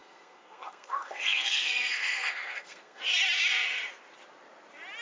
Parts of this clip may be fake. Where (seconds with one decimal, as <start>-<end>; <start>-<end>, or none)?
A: 0.0-3.0